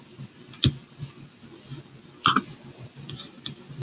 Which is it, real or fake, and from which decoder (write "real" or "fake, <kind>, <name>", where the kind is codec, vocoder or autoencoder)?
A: fake, vocoder, BigVGAN v2